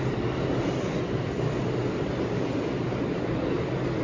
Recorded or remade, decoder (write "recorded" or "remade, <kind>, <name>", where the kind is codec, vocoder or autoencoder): remade, vocoder, BigVGAN v2